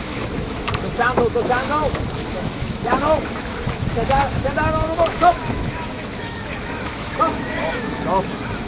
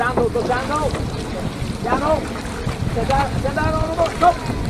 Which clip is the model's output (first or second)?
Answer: first